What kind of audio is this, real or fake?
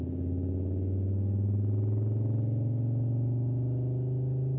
real